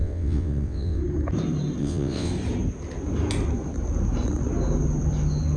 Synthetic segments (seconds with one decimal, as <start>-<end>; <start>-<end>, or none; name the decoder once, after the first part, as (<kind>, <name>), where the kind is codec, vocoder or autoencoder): 0.0-1.0 (vocoder, WaveNeXt); 1.8-2.3